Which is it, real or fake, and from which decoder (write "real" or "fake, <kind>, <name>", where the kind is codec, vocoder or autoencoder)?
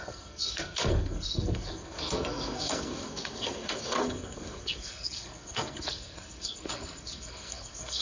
fake, codec, SNAC